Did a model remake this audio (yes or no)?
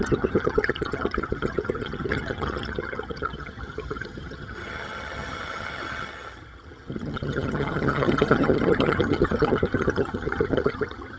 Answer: yes